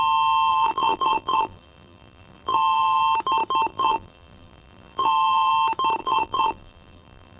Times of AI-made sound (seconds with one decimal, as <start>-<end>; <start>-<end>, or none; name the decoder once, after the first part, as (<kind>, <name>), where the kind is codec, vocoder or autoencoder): 0.5-3.0 (vocoder, BigVGAN v2); 3.7-5.5; 6.0-7.4